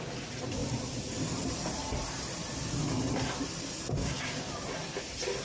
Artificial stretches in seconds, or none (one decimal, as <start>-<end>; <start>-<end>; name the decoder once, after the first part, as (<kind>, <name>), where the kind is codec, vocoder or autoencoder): 4.0-4.5 (codec, DAC)